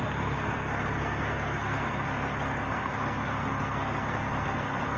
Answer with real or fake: fake